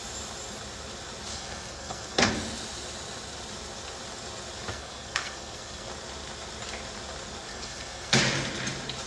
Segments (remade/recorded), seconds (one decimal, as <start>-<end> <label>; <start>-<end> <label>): 0.0-1.3 recorded; 1.3-2.3 remade; 2.3-4.7 recorded; 4.7-5.9 remade; 5.9-7.5 recorded; 7.5-8.2 remade; 8.2-9.1 recorded